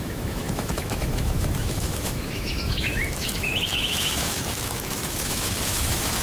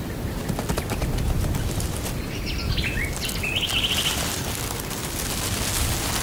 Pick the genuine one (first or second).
second